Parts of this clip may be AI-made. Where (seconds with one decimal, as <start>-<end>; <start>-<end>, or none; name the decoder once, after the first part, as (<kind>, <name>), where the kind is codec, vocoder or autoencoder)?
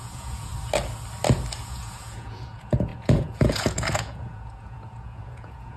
0.0-0.5 (vocoder, Vocos); 1.6-5.8